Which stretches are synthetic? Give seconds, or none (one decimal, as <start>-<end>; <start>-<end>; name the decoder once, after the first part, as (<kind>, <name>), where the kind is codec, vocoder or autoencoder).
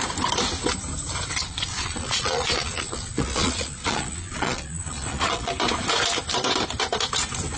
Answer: 1.4-5.5 (vocoder, Vocos)